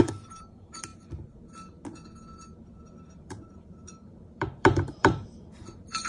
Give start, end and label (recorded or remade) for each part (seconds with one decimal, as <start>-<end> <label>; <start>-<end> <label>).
0.0-0.9 remade; 0.9-3.2 recorded; 3.2-6.1 remade